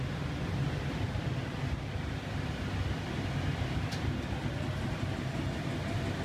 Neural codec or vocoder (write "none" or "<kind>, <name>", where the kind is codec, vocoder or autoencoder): none